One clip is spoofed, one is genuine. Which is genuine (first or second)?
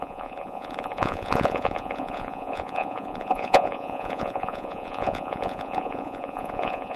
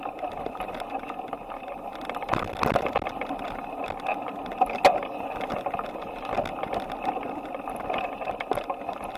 second